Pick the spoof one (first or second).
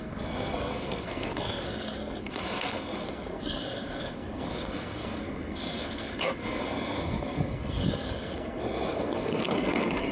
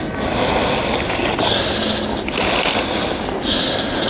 first